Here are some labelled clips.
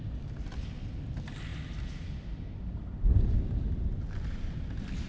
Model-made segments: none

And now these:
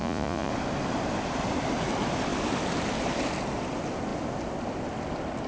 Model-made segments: 0.0-0.5 (vocoder, Vocos)